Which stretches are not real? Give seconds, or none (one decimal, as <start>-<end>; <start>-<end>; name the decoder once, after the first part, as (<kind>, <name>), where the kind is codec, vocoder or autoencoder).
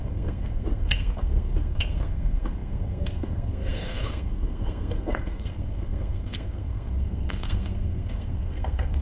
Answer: 0.0-9.0 (codec, SNAC)